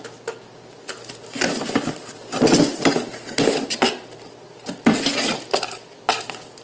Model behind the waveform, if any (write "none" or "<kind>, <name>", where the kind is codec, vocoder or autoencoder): none